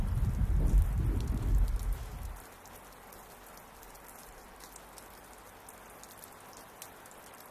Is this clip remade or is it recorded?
recorded